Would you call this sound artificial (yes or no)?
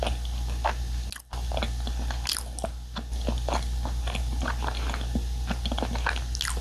no